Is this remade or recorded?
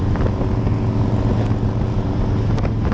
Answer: recorded